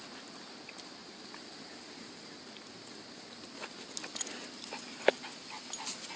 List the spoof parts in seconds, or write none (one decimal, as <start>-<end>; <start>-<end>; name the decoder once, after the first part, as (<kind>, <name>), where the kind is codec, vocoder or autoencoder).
none